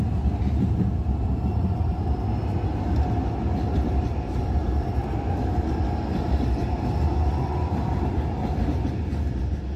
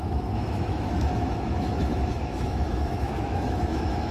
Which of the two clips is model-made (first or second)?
second